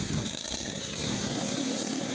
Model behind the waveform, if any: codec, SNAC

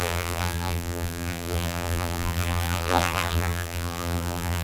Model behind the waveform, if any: vocoder, BigVGAN v2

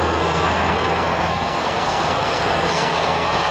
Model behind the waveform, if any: codec, SNAC